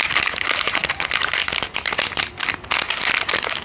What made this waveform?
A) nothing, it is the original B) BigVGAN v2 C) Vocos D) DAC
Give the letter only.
A